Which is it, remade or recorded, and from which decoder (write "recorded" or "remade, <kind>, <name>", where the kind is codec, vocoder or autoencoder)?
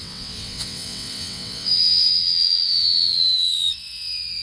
remade, vocoder, WaveNeXt